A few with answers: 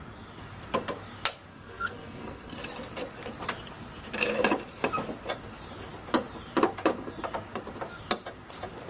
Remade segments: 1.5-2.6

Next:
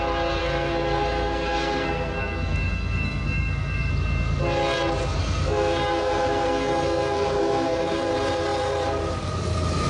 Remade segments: 0.4-3.9; 5.2-8.1

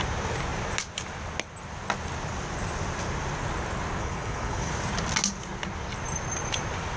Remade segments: 4.0-4.7

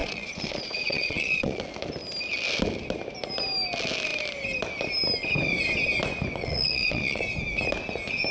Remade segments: 0.0-1.6; 6.4-7.2

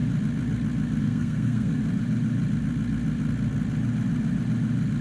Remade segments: 1.0-1.8

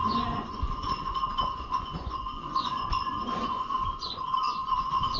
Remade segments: 0.0-5.2

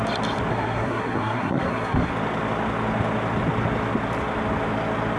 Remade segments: 0.5-2.1